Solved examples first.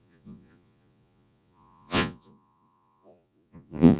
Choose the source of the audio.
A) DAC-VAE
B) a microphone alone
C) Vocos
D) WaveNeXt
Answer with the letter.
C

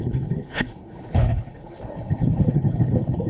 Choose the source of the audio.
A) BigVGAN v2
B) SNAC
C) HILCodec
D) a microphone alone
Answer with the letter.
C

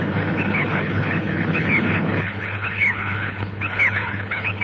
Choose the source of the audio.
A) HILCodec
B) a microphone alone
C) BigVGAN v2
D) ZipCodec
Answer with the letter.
A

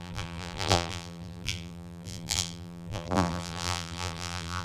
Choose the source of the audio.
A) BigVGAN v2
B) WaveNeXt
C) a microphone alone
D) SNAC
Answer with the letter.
A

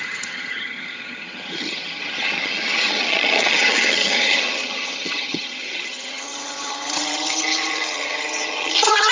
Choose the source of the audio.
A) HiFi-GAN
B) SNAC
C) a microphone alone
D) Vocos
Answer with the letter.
A